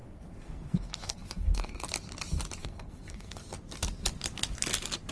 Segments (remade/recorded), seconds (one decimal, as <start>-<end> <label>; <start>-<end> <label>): 0.0-1.9 remade; 1.9-2.6 recorded; 2.6-3.4 remade; 3.4-5.1 recorded